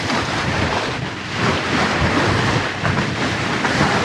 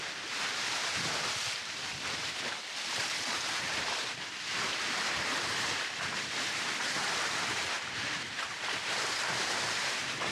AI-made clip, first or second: second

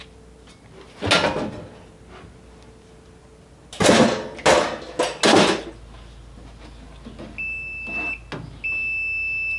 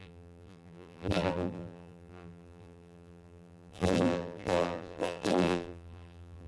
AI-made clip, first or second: second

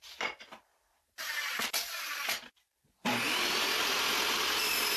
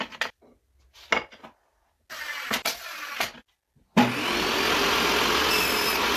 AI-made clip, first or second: first